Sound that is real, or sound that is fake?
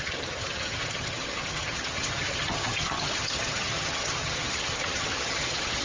fake